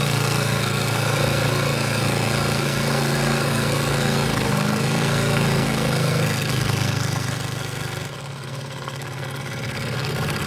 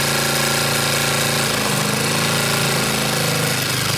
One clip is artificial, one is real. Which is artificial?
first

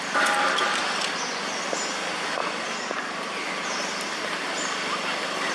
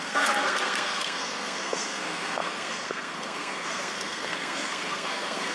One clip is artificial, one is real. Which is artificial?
second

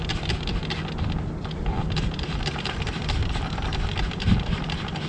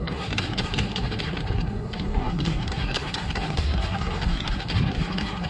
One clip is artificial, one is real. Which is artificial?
second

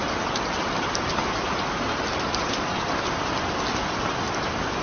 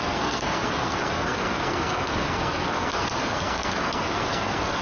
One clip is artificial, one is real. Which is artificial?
second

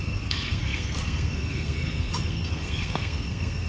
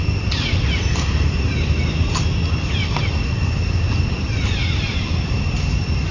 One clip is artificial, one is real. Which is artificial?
first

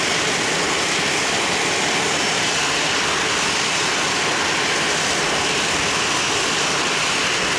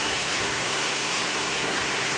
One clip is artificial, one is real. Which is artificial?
second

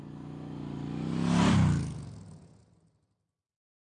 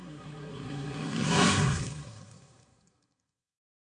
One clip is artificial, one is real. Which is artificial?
second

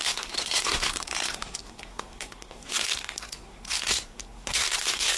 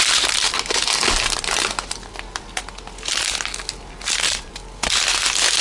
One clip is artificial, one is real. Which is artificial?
first